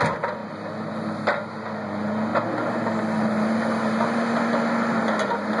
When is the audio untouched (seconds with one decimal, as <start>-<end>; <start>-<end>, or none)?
0.0-5.6